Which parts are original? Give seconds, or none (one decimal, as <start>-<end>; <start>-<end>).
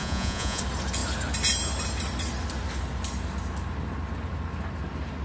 0.6-5.2